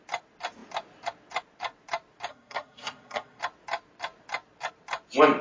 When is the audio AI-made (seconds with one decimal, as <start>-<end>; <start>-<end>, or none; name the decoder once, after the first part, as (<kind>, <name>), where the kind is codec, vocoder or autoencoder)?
2.3-3.4 (codec, SNAC)